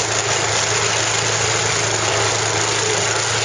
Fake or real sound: real